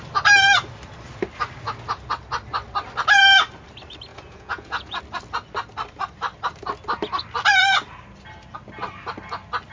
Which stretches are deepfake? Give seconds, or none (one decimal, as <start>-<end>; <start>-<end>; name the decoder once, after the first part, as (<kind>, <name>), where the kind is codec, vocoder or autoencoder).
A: 4.1-5.0 (vocoder, Vocos)